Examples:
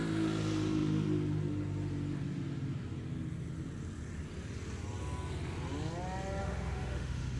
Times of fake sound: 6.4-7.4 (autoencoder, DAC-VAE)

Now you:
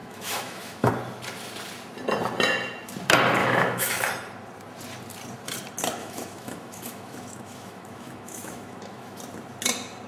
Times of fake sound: 0.0-0.9 (autoencoder, DAC-VAE); 3.4-4.1; 6.0-9.2

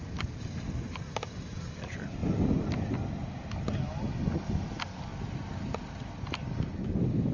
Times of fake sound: none

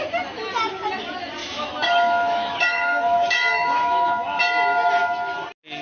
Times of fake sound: 1.4-4.4 (autoencoder, DAC-VAE)